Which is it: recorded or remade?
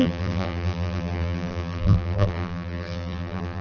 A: remade